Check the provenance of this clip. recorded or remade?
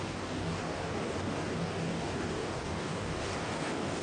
remade